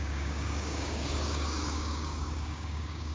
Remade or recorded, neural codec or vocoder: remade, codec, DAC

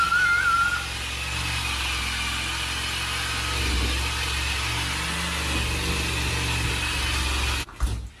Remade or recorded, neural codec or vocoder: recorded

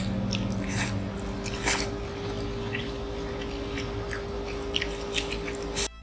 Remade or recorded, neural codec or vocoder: recorded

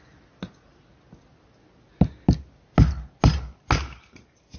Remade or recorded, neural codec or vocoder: recorded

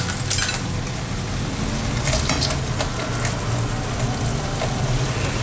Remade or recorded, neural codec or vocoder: recorded